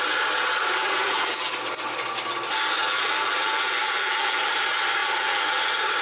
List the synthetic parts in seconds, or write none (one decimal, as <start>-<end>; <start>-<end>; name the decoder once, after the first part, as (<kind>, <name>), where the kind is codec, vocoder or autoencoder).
0.8-1.5 (vocoder, BigVGAN v2); 2.8-4.5; 5.0-5.6